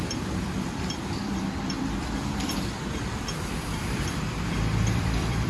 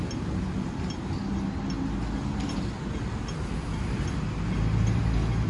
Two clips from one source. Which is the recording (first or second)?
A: second